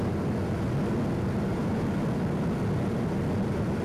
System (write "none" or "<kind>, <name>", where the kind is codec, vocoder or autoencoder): none